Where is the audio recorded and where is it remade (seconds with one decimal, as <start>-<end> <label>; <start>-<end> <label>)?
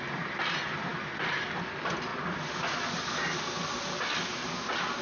0.0-5.0 recorded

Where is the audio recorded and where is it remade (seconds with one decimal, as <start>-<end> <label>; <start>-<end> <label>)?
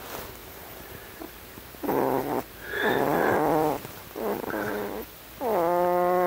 0.0-0.4 recorded; 0.4-2.2 remade; 2.2-6.3 recorded